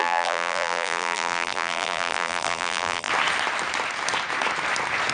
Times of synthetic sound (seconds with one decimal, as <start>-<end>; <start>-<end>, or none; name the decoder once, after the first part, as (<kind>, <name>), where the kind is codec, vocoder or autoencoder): 0.0-3.1 (vocoder, BigVGAN v2)